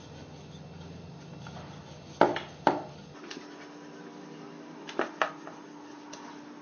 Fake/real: real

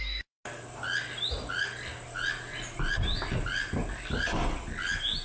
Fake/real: real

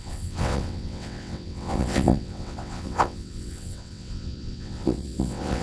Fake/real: fake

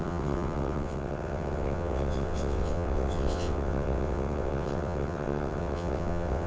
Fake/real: fake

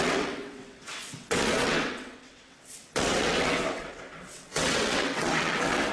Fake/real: fake